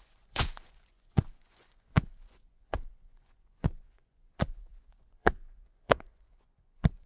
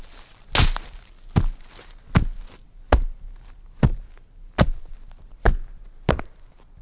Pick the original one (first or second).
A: second